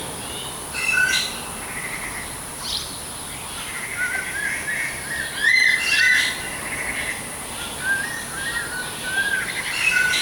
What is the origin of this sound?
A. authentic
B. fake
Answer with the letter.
B